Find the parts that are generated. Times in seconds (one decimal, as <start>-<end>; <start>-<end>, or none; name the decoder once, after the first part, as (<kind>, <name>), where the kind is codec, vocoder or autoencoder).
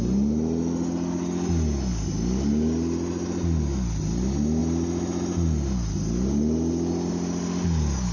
none